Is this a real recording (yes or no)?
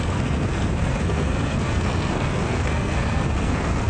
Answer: no